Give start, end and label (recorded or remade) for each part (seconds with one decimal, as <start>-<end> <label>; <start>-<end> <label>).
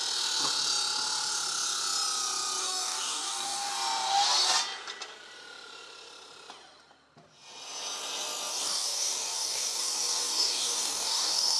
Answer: 0.0-2.6 recorded; 2.6-3.7 remade; 3.7-8.5 recorded; 8.5-11.6 remade